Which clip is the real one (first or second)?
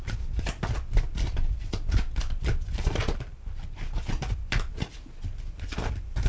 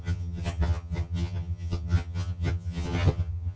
first